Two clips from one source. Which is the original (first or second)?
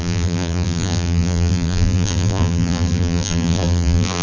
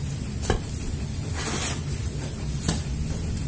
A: second